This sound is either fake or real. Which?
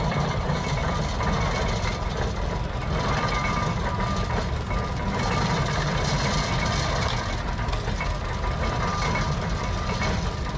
real